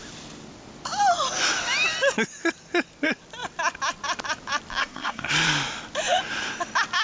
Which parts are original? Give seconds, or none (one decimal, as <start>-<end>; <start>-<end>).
0.0-4.8; 5.3-7.0

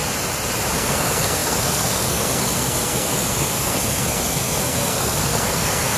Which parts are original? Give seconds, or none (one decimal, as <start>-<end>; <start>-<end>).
0.0-0.7

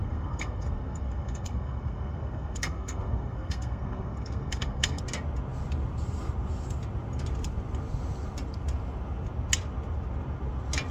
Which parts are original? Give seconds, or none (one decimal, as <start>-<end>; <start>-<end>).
5.0-10.9

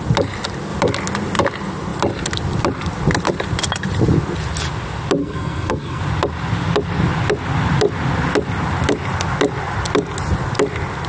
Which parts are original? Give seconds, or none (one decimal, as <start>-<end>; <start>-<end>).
0.0-5.2; 6.0-11.1

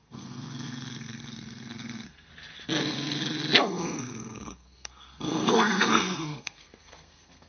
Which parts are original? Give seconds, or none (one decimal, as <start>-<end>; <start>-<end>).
2.3-2.8

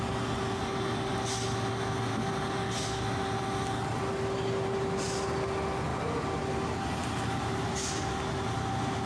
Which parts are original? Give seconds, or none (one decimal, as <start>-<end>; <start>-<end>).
0.0-9.1